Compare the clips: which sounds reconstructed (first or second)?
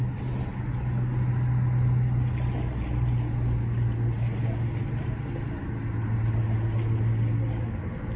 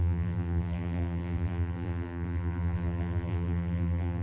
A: second